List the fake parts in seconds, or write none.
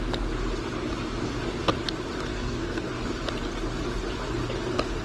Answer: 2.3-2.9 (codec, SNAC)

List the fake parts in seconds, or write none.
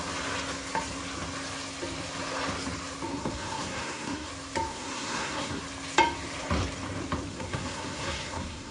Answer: 3.1-4.3 (codec, SNAC); 4.7-5.6; 7.3-8.7